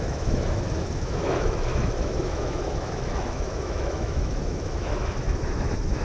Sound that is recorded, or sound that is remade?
remade